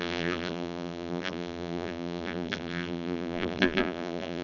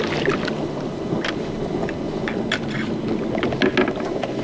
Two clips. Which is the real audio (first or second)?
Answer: second